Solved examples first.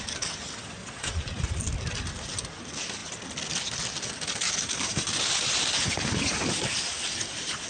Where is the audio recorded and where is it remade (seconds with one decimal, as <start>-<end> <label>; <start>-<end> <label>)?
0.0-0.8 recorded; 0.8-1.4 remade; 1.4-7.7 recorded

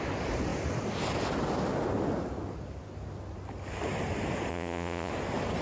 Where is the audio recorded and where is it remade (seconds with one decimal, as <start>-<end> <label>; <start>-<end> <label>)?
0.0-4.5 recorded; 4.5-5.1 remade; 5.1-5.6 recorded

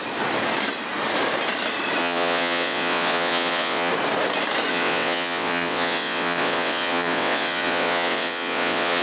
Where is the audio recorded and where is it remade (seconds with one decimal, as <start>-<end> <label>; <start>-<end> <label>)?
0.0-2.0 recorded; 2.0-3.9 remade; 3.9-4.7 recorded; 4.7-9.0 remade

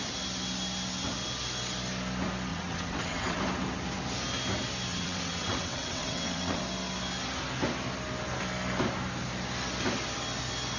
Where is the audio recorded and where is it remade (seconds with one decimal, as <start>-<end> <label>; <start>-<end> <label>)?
0.0-2.5 recorded; 2.5-3.4 remade; 3.4-4.9 recorded; 4.9-6.6 remade; 6.6-10.8 recorded

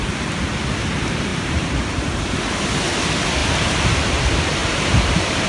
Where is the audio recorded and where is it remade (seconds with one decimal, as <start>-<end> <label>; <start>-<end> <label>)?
0.0-1.3 recorded; 1.3-2.3 remade; 2.3-3.4 recorded; 3.4-4.0 remade; 4.0-4.6 recorded; 4.6-5.5 remade

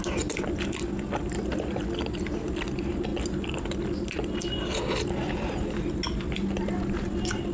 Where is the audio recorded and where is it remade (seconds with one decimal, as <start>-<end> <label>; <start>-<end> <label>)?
0.0-7.5 recorded